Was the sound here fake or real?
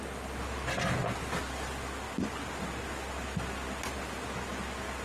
real